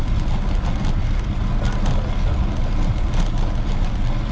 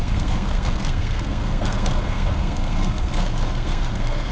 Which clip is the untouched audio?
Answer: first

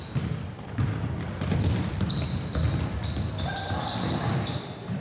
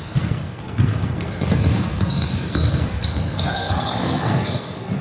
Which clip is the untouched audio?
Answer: first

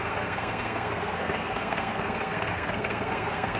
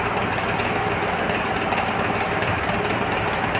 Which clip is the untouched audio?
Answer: second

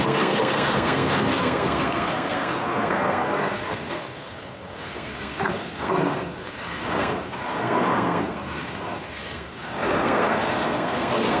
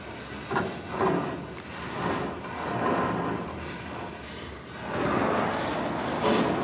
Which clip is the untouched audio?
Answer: second